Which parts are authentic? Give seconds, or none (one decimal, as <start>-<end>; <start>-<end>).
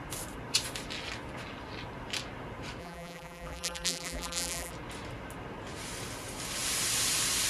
0.0-2.8; 4.7-7.5